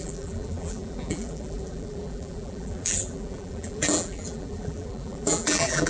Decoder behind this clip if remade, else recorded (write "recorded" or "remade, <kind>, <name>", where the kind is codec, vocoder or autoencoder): remade, vocoder, BigVGAN v2